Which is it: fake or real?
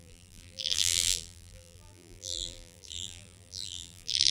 fake